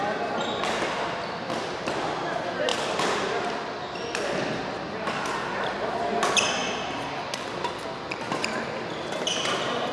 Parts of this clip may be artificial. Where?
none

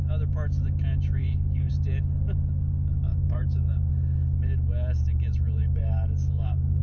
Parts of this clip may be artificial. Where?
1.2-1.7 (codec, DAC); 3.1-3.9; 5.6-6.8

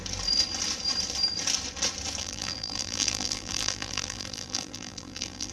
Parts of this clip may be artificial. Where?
2.2-5.5 (vocoder, BigVGAN v2)

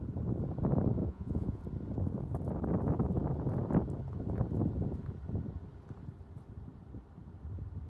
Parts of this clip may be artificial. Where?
1.0-1.6 (vocoder, Vocos)